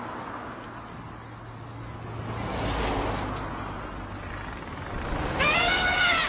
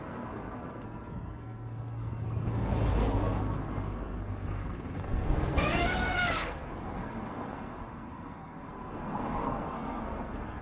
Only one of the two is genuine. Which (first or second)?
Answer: first